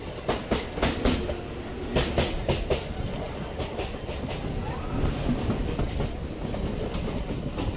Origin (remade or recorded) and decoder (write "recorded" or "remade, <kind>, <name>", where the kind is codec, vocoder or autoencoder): recorded